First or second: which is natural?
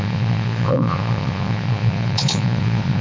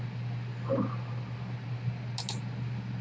second